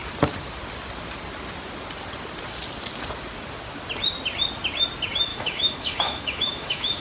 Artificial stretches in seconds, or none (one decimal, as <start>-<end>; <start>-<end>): 5.3-7.0